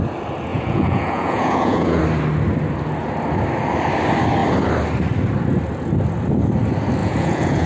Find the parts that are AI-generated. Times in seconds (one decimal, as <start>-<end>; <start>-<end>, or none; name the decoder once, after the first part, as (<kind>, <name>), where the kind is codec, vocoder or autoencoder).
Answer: 0.5-2.0 (vocoder, Vocos); 7.0-7.7